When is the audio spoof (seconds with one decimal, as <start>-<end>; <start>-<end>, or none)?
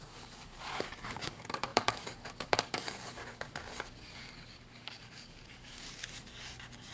0.0-6.9